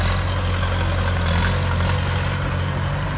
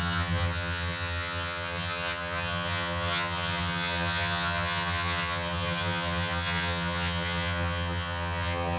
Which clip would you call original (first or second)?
first